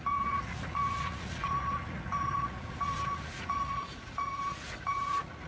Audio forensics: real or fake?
fake